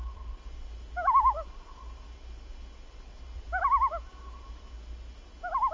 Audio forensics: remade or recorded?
recorded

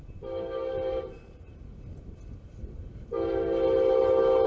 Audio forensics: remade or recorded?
recorded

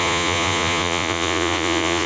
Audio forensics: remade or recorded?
remade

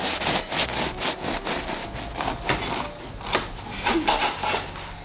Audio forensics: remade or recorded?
recorded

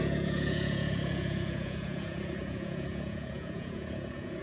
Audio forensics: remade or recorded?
remade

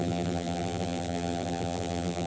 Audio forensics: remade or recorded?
remade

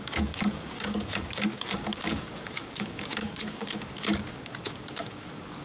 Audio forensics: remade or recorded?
remade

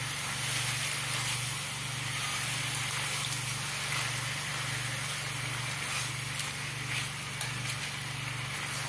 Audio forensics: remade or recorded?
recorded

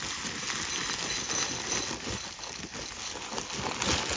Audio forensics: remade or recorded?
recorded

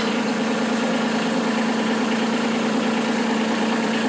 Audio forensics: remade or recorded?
remade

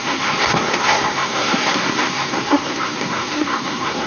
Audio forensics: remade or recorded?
remade